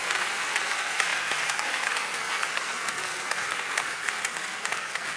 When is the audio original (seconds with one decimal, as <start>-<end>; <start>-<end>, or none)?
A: none